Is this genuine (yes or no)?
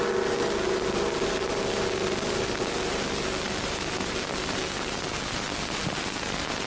yes